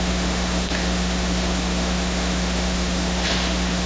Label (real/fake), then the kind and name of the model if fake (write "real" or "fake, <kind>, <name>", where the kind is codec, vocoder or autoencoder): fake, autoencoder, DAC-VAE